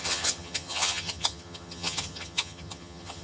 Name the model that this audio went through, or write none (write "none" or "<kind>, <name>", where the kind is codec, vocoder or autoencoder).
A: vocoder, HiFi-GAN